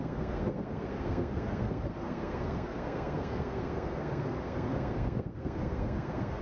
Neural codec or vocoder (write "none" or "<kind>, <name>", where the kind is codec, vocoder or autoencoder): codec, SNAC